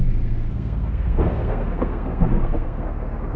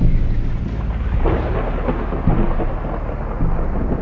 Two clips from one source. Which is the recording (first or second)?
second